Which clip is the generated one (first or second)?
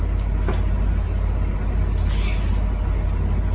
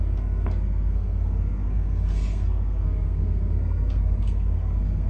second